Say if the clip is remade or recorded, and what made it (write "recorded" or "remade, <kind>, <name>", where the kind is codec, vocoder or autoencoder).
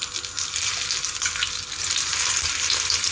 recorded